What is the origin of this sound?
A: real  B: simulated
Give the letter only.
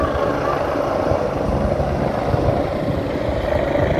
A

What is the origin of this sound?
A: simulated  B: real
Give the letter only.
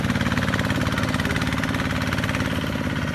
B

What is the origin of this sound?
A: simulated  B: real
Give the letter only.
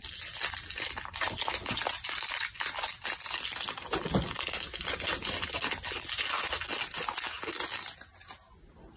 B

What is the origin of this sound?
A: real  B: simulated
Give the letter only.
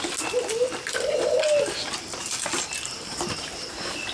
A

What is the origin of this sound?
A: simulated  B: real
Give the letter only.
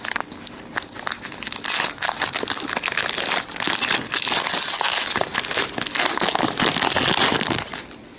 B